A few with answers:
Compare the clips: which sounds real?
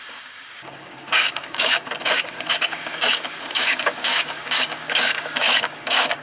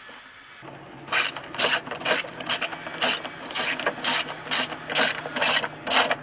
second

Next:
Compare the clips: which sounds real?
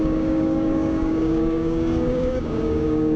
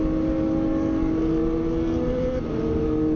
second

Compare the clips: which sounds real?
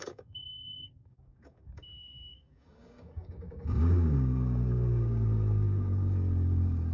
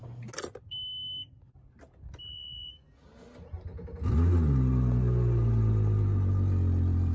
second